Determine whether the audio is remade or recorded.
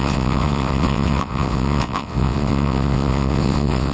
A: remade